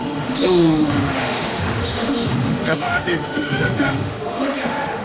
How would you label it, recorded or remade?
remade